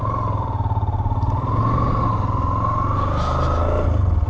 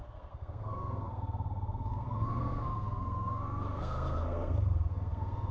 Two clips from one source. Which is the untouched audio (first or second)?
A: first